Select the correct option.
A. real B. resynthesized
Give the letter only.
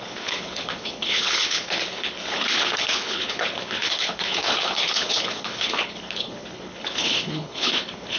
B